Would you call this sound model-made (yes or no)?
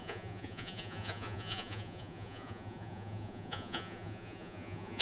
yes